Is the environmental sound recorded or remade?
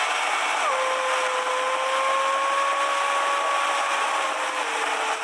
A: recorded